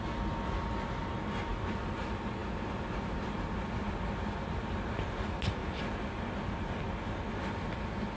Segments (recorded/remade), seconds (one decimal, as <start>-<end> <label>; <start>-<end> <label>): 0.0-8.2 recorded